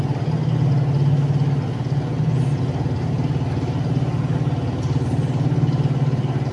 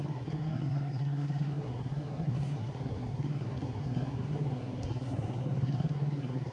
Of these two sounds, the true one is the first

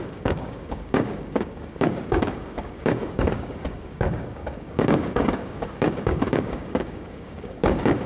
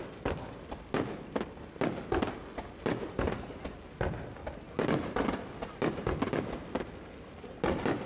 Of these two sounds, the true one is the second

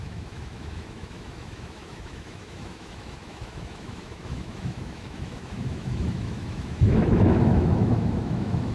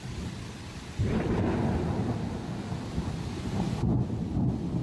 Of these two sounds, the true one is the second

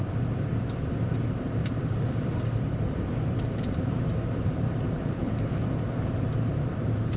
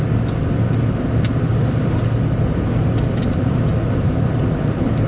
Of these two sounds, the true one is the second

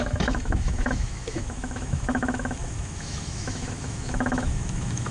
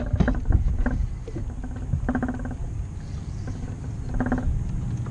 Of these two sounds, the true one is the second